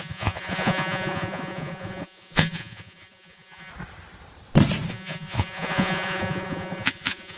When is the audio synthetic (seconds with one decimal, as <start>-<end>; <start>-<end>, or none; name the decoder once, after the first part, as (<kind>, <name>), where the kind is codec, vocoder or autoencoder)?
0.0-3.7 (vocoder, Vocos); 4.9-7.4